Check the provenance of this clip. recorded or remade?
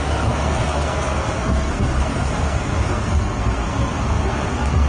remade